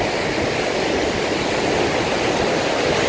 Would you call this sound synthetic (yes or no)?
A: no